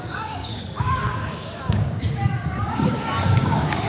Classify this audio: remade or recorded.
remade